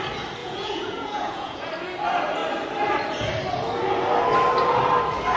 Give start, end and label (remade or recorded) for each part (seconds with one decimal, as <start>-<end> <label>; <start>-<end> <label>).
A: 0.0-0.4 recorded; 0.4-1.7 remade; 1.7-5.4 recorded